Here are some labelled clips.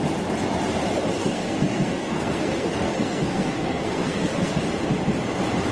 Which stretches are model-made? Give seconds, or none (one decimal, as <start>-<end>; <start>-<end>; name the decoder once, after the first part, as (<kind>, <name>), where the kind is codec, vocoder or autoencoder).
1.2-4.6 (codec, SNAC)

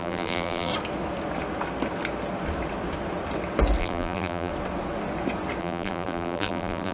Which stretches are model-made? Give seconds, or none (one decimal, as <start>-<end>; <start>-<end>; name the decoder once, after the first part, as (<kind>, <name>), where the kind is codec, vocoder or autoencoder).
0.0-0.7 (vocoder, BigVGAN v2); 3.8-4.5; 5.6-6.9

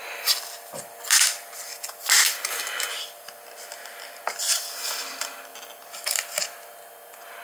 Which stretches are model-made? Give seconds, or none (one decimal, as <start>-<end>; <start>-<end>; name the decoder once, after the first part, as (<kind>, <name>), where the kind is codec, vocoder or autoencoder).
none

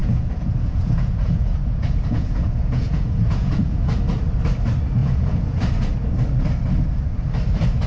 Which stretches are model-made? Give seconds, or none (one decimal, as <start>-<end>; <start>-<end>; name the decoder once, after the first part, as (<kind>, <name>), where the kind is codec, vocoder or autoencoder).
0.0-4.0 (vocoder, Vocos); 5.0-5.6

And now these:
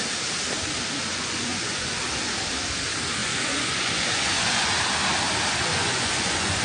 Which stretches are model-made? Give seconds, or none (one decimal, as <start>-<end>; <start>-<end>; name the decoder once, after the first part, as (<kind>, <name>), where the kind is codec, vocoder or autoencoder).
1.1-2.0 (vocoder, Vocos); 3.2-4.7; 5.7-6.6

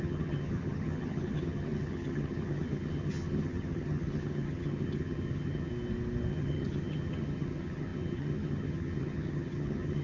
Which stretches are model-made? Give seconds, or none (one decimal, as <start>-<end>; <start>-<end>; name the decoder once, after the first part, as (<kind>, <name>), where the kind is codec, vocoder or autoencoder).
0.0-5.7 (vocoder, HiFi-GAN); 6.3-10.0